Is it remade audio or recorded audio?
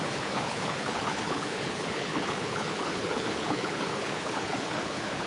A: remade